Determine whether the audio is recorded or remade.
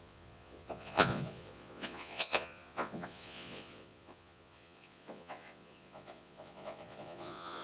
remade